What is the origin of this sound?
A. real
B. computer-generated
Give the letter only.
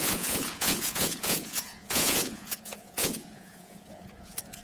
B